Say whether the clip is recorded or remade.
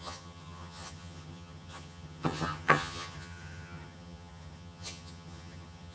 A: remade